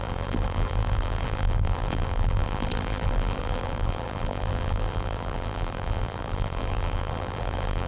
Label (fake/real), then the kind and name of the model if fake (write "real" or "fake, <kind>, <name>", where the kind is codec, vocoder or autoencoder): fake, vocoder, BigVGAN v2